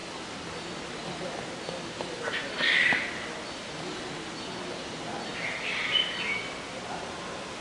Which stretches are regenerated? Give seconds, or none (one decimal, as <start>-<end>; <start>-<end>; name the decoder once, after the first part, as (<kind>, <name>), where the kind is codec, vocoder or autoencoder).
none